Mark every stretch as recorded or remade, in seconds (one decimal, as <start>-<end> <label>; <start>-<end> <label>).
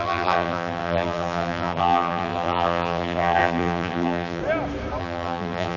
0.0-4.4 remade; 4.4-5.0 recorded; 5.0-5.8 remade